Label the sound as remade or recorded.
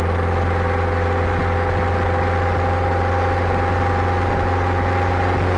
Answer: recorded